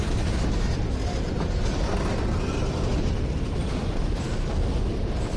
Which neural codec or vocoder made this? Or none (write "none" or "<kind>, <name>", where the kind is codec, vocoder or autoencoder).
none